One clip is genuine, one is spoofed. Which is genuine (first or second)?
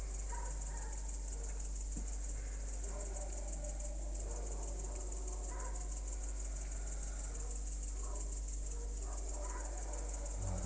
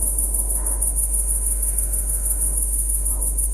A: first